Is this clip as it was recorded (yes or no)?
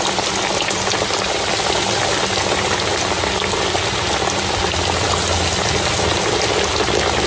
yes